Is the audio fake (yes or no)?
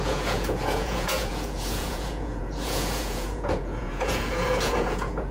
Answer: yes